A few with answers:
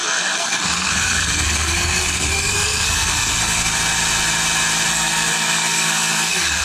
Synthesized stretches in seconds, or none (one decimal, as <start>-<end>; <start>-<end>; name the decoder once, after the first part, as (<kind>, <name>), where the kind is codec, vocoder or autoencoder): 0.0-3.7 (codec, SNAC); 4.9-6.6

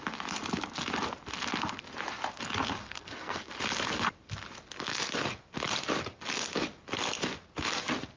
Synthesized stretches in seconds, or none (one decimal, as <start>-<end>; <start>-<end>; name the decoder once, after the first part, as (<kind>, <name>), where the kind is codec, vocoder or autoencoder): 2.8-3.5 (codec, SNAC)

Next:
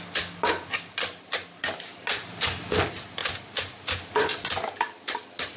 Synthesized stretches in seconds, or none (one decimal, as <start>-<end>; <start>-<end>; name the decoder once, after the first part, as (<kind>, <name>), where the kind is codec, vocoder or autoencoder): none

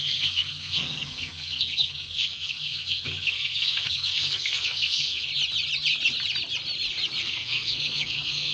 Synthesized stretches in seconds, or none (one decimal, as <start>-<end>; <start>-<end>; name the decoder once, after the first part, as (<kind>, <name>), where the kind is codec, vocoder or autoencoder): 0.0-5.3 (codec, SNAC); 7.2-8.5